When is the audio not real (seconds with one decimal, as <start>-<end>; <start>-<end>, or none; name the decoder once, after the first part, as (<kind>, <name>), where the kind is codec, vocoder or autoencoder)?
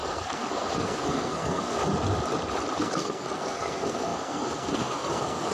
0.0-1.8 (codec, SNAC); 2.8-5.5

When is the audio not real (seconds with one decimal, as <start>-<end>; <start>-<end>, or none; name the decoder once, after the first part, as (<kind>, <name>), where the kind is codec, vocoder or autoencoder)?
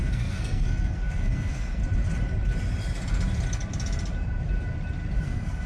0.0-1.8 (codec, SNAC); 5.2-5.7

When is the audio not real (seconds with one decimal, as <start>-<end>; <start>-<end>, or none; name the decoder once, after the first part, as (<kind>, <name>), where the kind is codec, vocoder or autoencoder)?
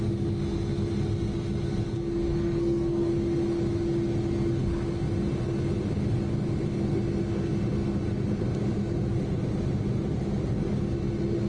2.3-3.1 (codec, SNAC)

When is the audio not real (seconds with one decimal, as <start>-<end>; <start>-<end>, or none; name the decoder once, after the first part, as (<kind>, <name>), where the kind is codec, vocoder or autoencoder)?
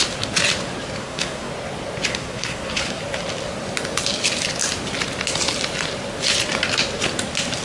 1.0-1.5 (codec, SNAC); 2.1-3.0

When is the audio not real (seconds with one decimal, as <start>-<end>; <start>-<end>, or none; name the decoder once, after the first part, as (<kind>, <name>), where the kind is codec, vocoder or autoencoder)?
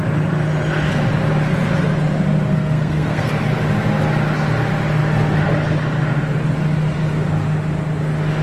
2.5-3.3 (codec, SNAC)